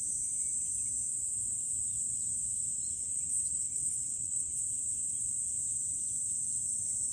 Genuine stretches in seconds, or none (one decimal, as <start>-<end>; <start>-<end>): 0.0-2.7; 4.6-7.1